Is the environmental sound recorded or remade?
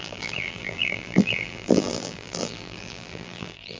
remade